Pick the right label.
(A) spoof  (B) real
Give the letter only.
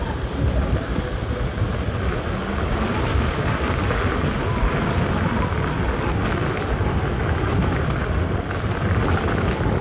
B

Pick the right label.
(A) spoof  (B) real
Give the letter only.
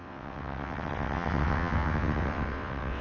A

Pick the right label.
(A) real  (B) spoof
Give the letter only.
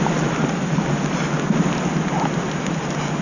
A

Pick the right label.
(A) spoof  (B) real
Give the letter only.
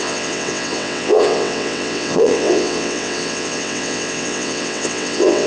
A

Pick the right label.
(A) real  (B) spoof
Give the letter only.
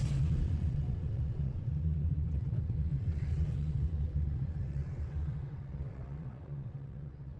B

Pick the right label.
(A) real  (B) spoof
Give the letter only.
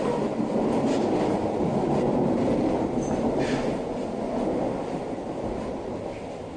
A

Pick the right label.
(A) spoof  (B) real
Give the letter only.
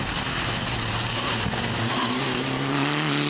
B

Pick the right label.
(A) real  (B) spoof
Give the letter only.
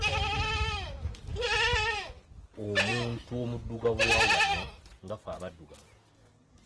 A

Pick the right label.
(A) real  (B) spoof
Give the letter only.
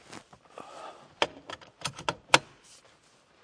A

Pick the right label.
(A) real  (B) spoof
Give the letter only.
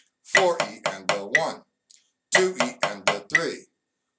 A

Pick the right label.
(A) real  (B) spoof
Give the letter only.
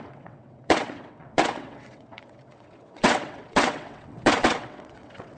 B